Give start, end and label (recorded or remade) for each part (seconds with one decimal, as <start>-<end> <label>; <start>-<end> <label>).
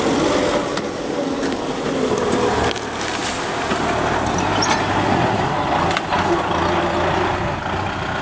0.0-0.7 recorded; 0.7-1.6 remade; 1.6-8.2 recorded